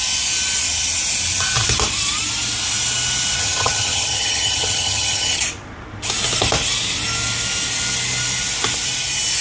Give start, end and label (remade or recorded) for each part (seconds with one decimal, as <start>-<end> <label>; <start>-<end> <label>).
0.0-3.4 recorded; 3.4-5.4 remade; 5.4-9.4 recorded